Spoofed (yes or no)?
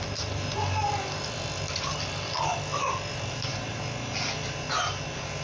no